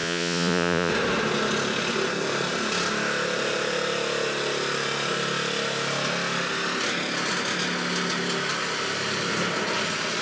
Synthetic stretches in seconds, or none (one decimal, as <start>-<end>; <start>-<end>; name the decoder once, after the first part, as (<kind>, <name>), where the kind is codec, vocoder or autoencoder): 0.0-0.9 (vocoder, Vocos)